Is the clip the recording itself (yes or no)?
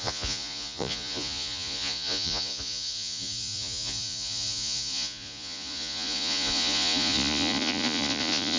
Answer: no